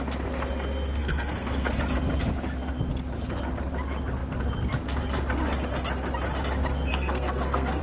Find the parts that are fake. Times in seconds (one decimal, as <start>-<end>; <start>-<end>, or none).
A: 1.0-1.7; 6.9-7.8